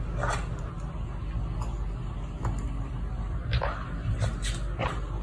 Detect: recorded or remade recorded